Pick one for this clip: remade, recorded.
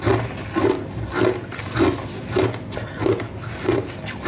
recorded